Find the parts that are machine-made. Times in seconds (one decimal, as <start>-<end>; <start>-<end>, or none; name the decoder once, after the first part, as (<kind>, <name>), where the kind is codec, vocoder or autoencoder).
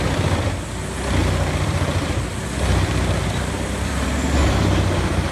1.2-4.1 (vocoder, BigVGAN v2)